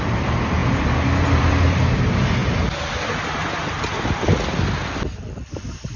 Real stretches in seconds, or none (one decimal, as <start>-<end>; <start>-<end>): 0.0-6.0